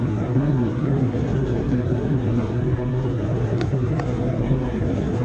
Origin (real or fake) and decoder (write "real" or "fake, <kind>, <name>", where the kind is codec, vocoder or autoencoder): fake, codec, SNAC